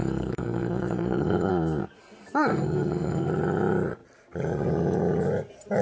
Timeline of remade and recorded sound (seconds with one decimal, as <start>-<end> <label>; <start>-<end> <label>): 0.0-1.5 remade; 1.5-2.5 recorded; 2.5-3.3 remade; 3.3-5.8 recorded